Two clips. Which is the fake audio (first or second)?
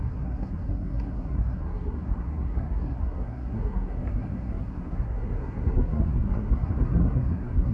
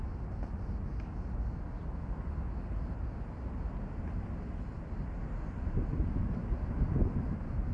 first